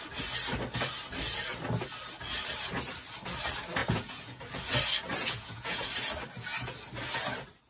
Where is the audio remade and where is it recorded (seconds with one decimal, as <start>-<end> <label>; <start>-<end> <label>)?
0.0-3.8 recorded; 3.8-4.4 remade; 4.4-5.2 recorded; 5.2-5.9 remade; 5.9-7.7 recorded